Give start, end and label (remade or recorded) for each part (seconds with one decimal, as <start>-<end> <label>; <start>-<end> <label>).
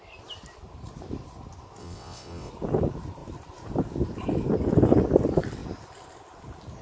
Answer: 0.0-1.8 recorded; 1.8-2.5 remade; 2.5-6.8 recorded